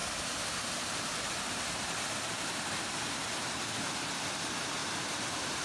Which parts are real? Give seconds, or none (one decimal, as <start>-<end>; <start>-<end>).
0.0-4.8